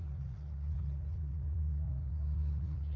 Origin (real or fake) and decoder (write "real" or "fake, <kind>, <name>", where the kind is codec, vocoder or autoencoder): fake, vocoder, Vocos